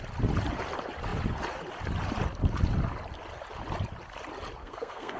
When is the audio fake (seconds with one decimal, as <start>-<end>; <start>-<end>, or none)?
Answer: 4.6-5.2